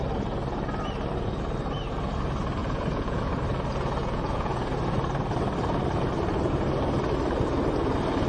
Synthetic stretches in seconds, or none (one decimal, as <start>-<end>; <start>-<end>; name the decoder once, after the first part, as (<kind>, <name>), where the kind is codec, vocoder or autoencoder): 2.6-3.2 (vocoder, Vocos); 4.0-4.7